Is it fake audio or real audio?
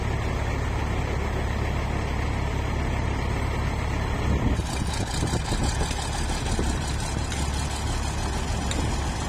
real